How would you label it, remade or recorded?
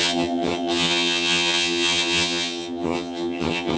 remade